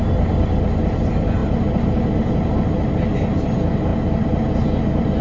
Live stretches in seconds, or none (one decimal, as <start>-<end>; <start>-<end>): 0.0-5.2